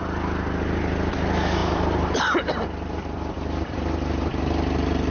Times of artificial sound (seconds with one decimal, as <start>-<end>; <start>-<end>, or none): 1.6-5.1